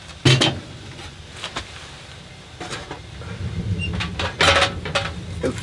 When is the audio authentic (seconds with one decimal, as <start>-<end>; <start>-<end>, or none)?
0.0-0.6; 1.2-5.6